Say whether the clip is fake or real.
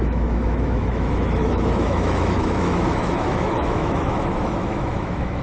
fake